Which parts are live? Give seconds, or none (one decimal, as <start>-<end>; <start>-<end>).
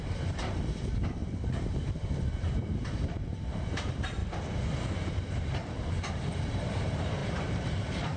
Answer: 4.2-4.9; 7.2-7.7